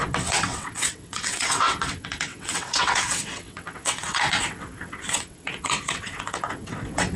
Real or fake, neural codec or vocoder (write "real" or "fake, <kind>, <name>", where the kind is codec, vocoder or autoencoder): fake, vocoder, WaveNeXt